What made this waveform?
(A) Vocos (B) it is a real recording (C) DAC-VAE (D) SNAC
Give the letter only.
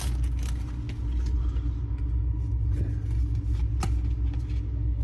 B